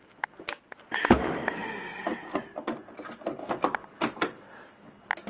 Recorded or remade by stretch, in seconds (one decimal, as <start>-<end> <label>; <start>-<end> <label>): 0.0-5.3 recorded